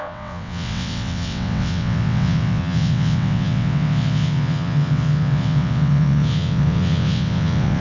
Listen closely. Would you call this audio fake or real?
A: fake